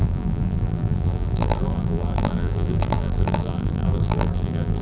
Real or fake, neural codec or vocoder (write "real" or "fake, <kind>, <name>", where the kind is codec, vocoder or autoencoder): fake, vocoder, BigVGAN v2